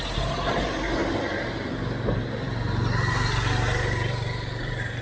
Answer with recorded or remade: recorded